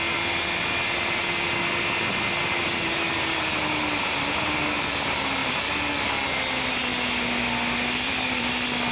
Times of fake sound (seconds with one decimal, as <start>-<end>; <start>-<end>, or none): none